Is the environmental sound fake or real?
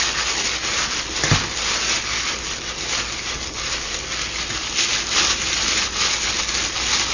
real